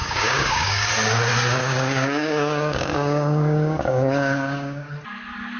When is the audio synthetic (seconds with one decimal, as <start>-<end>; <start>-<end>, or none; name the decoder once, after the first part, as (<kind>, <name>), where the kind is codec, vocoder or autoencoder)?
0.0-0.9 (codec, DAC); 1.6-4.9